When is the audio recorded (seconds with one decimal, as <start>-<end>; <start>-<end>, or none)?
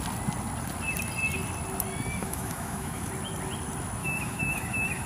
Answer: 0.0-2.2; 3.1-4.0